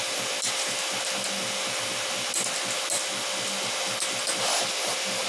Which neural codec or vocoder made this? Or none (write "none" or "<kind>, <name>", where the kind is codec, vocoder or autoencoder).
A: none